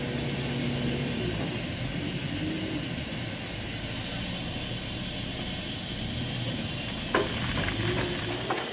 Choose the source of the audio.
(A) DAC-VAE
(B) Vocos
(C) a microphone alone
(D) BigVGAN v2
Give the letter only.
C